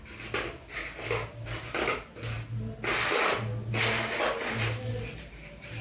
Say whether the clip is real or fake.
real